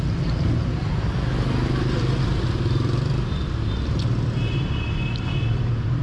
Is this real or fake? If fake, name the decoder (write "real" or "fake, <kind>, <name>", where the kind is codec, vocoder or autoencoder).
real